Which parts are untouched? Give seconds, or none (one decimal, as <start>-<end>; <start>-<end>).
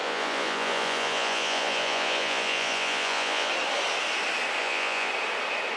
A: 3.5-4.6; 5.1-5.8